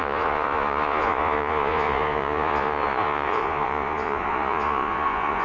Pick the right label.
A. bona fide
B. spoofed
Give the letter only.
B